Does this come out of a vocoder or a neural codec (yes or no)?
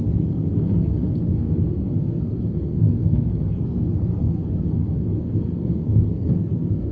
yes